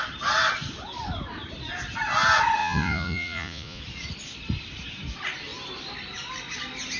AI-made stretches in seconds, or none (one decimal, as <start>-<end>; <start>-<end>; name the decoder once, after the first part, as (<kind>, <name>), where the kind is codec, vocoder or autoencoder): 2.6-3.8 (vocoder, Vocos)